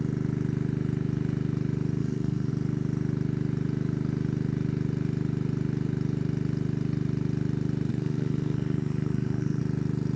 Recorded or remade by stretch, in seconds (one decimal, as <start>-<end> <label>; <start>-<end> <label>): 0.0-2.0 recorded; 2.0-2.5 remade; 2.5-7.9 recorded; 7.9-9.6 remade; 9.6-10.2 recorded